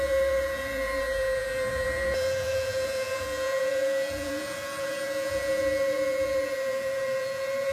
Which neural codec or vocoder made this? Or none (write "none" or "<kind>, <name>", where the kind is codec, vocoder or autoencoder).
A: vocoder, Vocos